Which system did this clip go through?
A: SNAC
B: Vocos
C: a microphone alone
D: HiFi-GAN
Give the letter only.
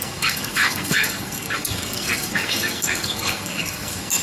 A